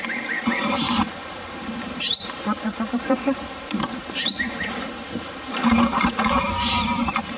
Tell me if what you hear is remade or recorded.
remade